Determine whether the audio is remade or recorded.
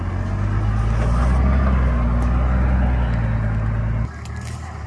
recorded